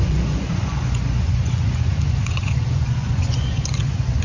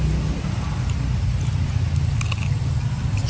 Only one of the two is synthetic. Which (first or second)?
first